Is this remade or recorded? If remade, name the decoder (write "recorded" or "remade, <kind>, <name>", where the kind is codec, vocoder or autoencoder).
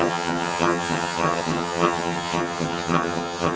remade, vocoder, HiFi-GAN